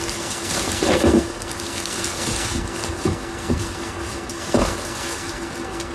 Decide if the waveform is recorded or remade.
remade